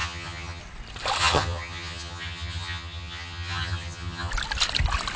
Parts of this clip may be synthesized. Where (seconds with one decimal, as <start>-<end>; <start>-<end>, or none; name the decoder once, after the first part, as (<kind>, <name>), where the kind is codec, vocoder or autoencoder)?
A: 0.0-0.6 (vocoder, HiFi-GAN); 1.2-4.3